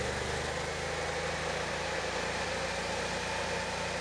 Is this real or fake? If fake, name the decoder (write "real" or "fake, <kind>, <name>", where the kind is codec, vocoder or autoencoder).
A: real